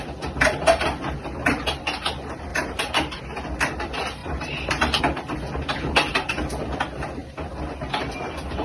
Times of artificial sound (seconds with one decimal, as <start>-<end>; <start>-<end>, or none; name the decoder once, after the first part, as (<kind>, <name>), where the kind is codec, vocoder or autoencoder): 2.5-3.2 (vocoder, BigVGAN v2); 4.2-5.0